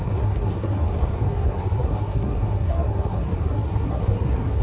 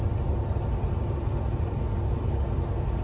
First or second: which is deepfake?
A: first